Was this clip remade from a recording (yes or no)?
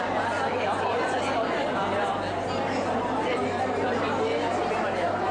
no